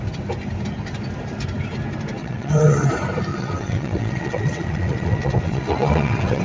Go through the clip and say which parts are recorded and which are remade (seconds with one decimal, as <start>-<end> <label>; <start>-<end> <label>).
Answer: 0.0-2.2 recorded; 2.2-2.9 remade; 2.9-3.3 recorded; 3.3-6.4 remade